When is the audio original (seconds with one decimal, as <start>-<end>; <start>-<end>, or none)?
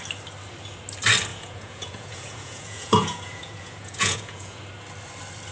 0.0-1.3; 4.6-5.5